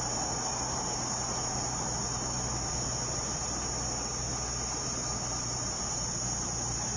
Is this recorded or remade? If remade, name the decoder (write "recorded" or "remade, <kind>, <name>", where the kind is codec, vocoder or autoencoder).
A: recorded